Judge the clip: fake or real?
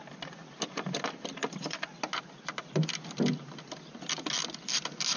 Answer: real